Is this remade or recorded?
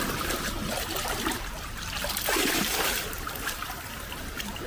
recorded